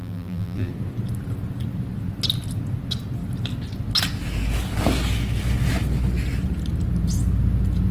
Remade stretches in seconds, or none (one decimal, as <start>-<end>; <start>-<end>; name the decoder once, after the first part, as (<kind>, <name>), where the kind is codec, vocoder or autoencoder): 0.0-0.7 (vocoder, BigVGAN v2)